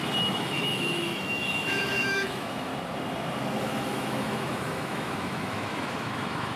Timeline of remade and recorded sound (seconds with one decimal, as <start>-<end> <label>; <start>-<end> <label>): 0.0-2.7 remade; 2.7-3.6 recorded; 3.6-6.6 remade